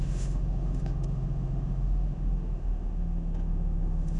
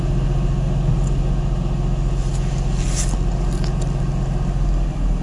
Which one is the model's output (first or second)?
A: first